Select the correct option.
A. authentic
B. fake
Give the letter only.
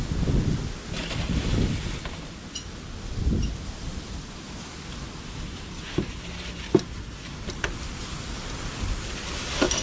A